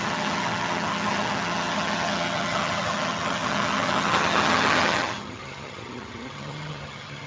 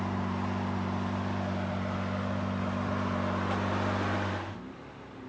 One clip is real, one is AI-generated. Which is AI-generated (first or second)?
first